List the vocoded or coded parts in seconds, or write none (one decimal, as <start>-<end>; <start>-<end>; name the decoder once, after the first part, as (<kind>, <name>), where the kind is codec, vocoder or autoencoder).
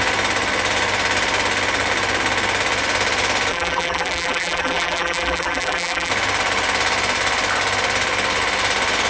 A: 3.5-6.1 (vocoder, BigVGAN v2)